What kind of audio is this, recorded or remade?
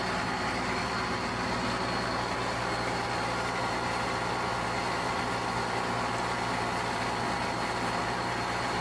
recorded